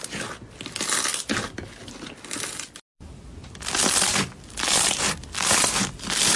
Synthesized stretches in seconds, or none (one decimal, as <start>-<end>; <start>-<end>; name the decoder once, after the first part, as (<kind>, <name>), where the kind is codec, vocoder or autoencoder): none